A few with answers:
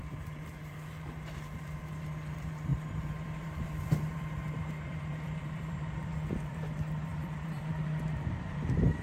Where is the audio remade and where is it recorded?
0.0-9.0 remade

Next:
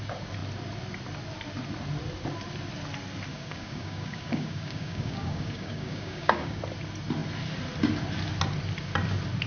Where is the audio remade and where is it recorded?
0.0-3.3 recorded; 3.3-6.6 remade; 6.6-9.5 recorded

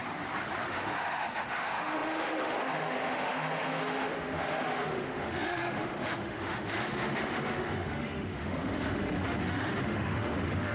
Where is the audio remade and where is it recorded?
0.0-0.7 recorded; 0.7-10.7 remade

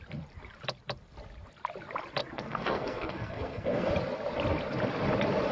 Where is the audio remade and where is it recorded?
0.0-2.2 recorded; 2.2-3.9 remade; 3.9-5.5 recorded

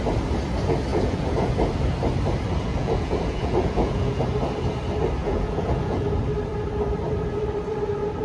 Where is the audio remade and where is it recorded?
0.0-0.9 recorded; 0.9-1.5 remade; 1.5-2.7 recorded; 2.7-4.2 remade; 4.2-5.2 recorded; 5.2-6.1 remade; 6.1-8.2 recorded

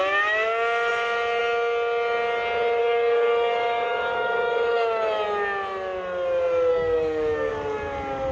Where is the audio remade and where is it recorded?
0.0-2.8 recorded; 2.8-5.0 remade; 5.0-6.7 recorded; 6.7-7.5 remade; 7.5-8.3 recorded

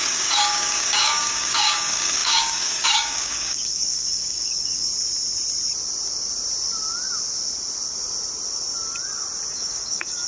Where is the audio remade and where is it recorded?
0.0-4.9 remade; 4.9-9.5 recorded; 9.5-10.3 remade